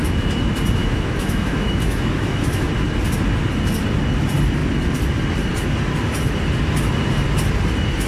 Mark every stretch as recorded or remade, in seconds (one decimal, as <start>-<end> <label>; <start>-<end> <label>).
0.0-0.8 recorded; 0.8-2.7 remade; 2.7-8.1 recorded